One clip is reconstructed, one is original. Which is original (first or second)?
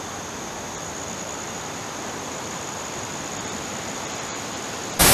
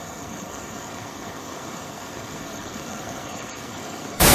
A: first